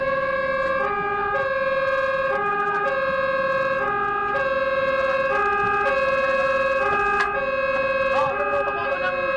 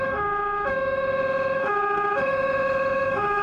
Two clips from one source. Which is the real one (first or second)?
first